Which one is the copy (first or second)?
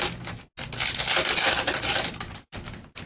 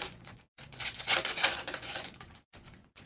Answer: second